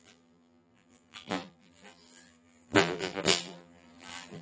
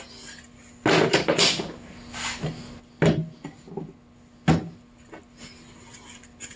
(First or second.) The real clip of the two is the second